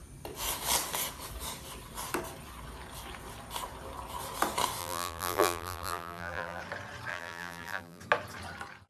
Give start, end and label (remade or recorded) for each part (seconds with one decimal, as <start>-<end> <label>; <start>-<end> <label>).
0.0-4.8 recorded; 4.8-6.6 remade; 6.6-7.1 recorded; 7.1-8.0 remade; 8.0-8.9 recorded